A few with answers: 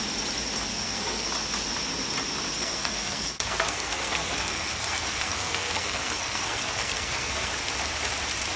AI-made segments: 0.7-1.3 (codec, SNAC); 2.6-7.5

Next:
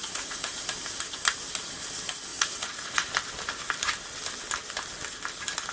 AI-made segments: 0.0-0.5 (vocoder, Vocos); 2.3-3.1

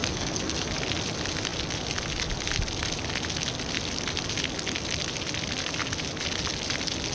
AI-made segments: 0.0-0.7 (codec, SNAC)

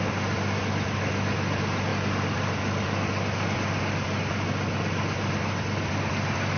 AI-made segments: none